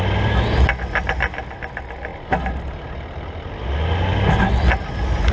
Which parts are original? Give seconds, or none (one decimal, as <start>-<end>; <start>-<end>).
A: 0.0-5.3